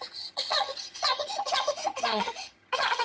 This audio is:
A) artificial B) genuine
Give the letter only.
A